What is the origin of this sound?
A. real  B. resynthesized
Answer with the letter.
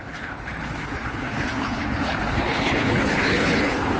B